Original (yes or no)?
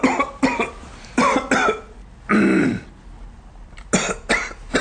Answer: yes